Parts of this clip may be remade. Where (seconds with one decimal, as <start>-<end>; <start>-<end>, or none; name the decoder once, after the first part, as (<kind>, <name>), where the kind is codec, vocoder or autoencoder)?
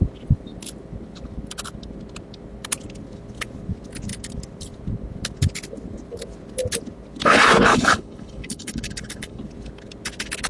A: 7.7-9.4 (codec, HILCodec)